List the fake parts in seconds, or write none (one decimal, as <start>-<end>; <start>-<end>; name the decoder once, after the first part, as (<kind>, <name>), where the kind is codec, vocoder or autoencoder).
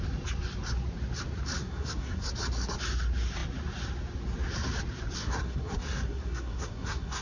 1.6-2.3 (codec, SNAC); 5.2-7.2